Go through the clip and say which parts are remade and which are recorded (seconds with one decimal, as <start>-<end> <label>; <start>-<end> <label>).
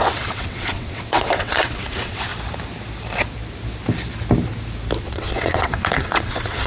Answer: 0.0-2.3 remade; 2.3-5.0 recorded; 5.0-6.7 remade